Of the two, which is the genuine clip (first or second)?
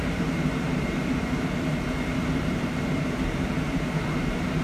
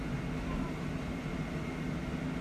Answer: second